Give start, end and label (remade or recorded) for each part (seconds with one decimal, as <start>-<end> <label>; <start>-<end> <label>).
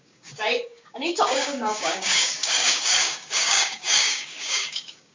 0.0-5.1 remade